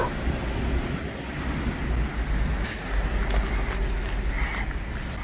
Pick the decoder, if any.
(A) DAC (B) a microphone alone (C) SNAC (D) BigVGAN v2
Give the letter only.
B